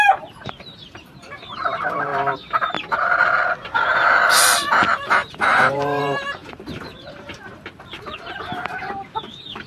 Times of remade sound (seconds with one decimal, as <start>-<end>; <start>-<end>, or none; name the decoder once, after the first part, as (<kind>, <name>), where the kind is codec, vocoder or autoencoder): 0.0-2.1 (vocoder, BigVGAN v2); 4.8-9.7